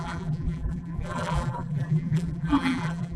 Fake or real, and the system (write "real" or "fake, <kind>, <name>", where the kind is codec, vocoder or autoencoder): fake, vocoder, BigVGAN v2